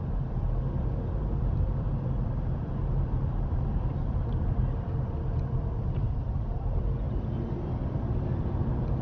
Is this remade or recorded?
remade